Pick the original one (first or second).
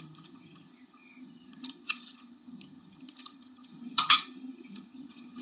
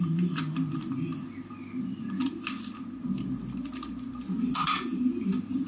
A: second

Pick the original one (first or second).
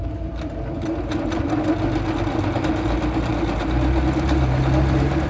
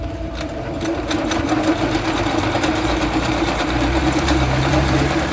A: first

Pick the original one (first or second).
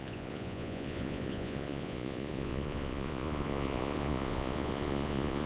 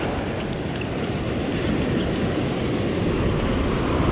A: second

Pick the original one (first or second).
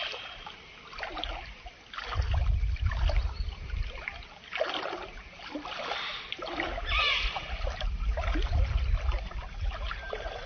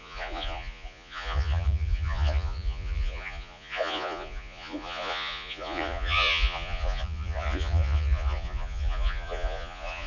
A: first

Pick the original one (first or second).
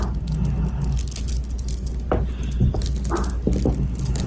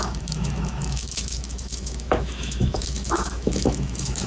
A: first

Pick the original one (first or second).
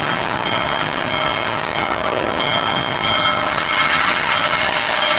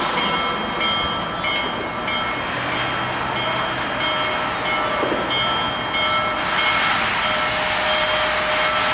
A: second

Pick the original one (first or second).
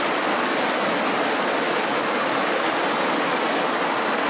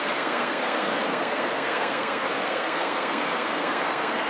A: first